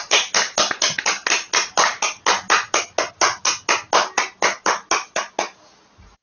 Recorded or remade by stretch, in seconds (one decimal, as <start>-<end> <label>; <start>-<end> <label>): 0.0-6.2 recorded